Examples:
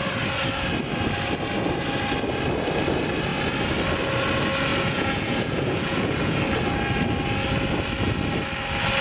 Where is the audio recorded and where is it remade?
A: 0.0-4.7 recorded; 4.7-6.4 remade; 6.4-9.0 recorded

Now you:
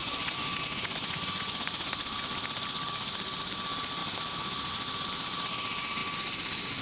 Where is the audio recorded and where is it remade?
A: 0.0-2.2 remade; 2.2-6.8 recorded

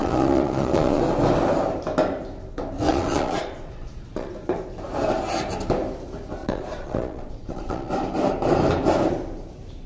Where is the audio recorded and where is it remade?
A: 0.0-1.0 remade; 1.0-2.9 recorded; 2.9-4.3 remade; 4.3-6.4 recorded; 6.4-7.9 remade; 7.9-9.9 recorded

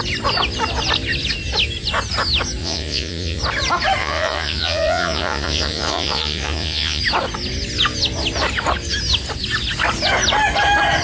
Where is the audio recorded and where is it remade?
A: 0.0-2.6 recorded; 2.6-3.4 remade; 3.4-4.0 recorded; 4.0-7.0 remade; 7.0-11.0 recorded

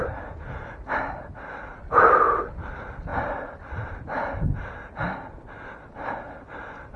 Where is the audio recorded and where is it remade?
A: 0.0-7.0 recorded

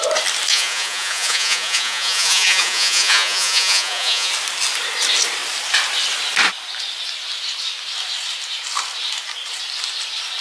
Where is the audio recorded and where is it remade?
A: 0.0-0.5 recorded; 0.5-4.3 remade; 4.3-10.4 recorded